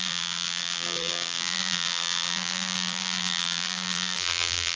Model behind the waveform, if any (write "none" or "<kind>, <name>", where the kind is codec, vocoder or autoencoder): vocoder, BigVGAN v2